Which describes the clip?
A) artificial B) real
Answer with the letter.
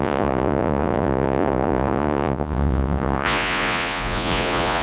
A